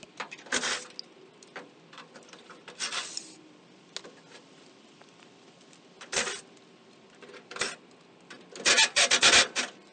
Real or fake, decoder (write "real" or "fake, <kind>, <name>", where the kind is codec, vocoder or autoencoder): real